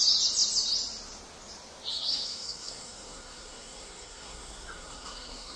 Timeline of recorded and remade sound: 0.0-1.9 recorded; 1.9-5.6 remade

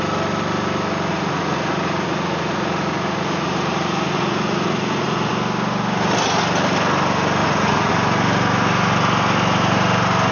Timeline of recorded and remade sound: 0.0-1.1 recorded; 1.1-5.3 remade; 5.3-7.4 recorded; 7.4-7.9 remade; 7.9-10.3 recorded

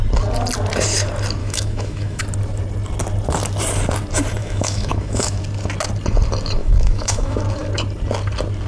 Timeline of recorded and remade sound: 0.0-1.4 recorded; 1.4-2.2 remade; 2.2-4.4 recorded; 4.4-5.4 remade; 5.4-6.6 recorded; 6.6-7.4 remade; 7.4-8.7 recorded

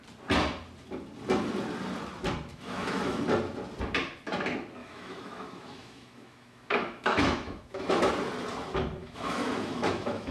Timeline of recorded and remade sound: 0.0-2.5 recorded; 2.5-3.2 remade; 3.2-4.8 recorded; 4.8-8.1 remade; 8.1-9.0 recorded; 9.0-10.3 remade

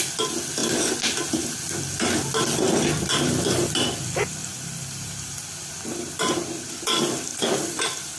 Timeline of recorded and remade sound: 0.0-4.4 recorded; 4.4-6.1 remade; 6.1-7.3 recorded; 7.3-8.2 remade

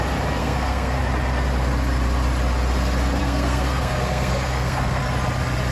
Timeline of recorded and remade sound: 0.0-0.4 recorded; 0.4-1.0 remade; 1.0-3.2 recorded; 3.2-5.0 remade; 5.0-5.7 recorded

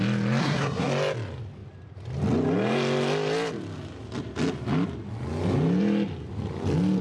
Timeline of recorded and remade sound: 0.0-0.4 recorded; 0.4-0.9 remade; 0.9-7.0 recorded

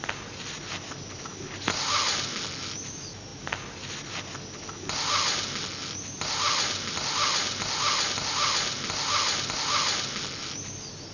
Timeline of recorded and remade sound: 0.0-11.1 recorded